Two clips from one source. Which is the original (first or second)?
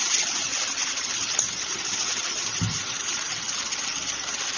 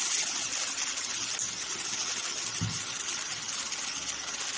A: second